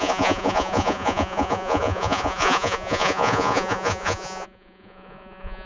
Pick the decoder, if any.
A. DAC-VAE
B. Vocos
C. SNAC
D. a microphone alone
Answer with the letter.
B